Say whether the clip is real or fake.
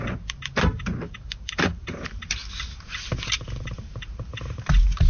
fake